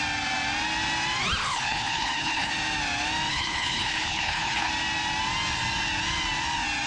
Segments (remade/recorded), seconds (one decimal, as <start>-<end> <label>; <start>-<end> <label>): 0.0-1.4 recorded; 1.4-2.5 remade; 2.5-3.3 recorded; 3.3-4.7 remade; 4.7-6.9 recorded